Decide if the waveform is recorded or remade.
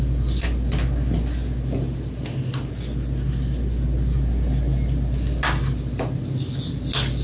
recorded